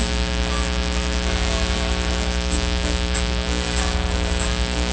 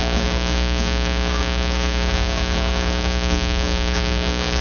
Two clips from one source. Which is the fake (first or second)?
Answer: second